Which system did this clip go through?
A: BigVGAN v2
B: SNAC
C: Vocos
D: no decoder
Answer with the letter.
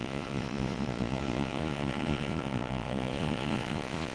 C